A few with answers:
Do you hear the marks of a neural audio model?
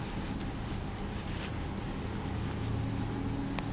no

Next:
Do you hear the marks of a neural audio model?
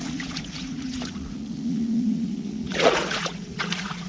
yes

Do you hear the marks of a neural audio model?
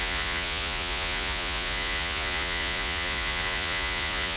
yes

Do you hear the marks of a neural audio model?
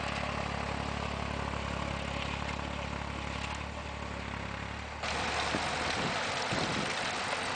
no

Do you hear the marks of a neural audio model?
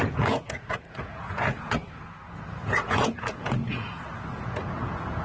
yes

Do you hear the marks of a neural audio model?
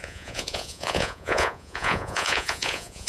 yes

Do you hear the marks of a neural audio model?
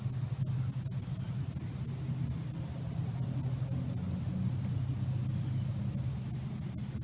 no